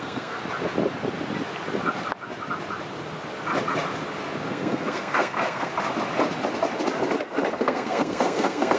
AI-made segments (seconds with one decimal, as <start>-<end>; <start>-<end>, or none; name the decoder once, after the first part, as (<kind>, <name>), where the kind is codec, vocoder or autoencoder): 0.0-0.4 (codec, SNAC); 4.5-5.7; 7.5-8.8